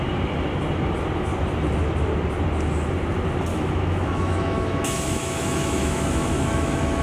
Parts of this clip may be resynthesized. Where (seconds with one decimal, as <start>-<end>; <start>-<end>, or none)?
3.5-7.0

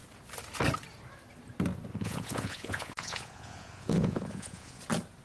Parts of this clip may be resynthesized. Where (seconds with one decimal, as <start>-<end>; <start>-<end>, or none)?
1.9-4.8